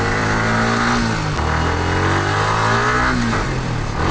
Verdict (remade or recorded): recorded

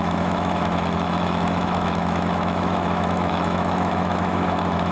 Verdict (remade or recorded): remade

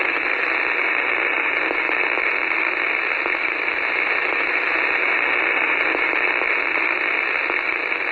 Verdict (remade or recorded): recorded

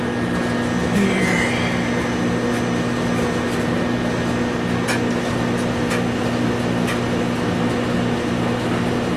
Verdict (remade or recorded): recorded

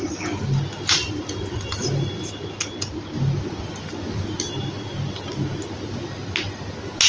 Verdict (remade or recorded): recorded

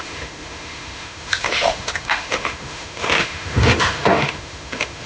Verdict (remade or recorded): remade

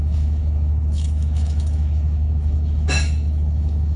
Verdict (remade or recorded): remade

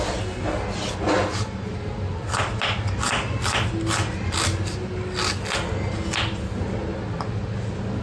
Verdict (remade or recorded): recorded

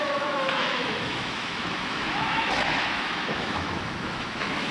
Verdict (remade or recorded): remade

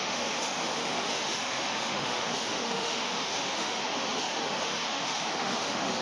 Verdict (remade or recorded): remade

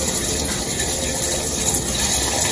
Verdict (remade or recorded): recorded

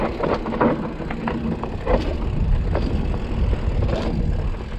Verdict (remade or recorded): recorded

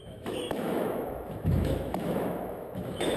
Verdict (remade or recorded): remade